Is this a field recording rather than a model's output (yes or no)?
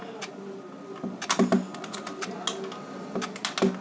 yes